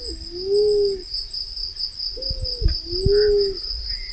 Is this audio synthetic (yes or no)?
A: no